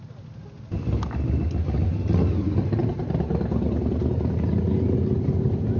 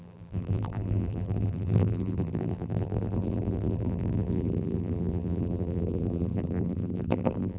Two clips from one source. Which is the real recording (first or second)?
first